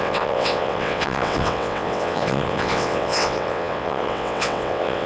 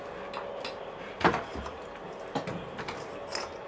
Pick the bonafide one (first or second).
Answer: second